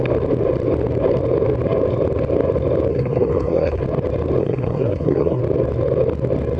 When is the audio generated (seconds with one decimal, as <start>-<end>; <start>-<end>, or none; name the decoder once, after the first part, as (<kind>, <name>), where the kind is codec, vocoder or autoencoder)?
2.9-3.8 (codec, SNAC); 4.4-5.4